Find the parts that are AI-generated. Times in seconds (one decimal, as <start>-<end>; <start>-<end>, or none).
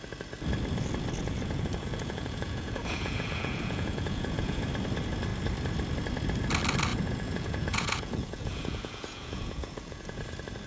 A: 1.2-4.6; 6.9-10.2